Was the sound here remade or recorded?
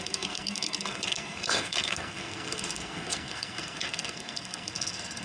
remade